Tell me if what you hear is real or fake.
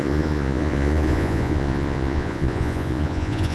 fake